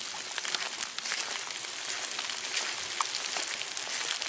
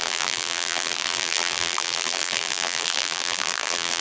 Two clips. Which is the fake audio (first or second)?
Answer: second